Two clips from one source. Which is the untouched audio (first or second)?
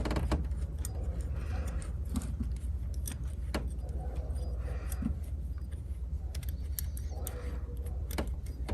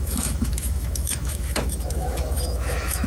first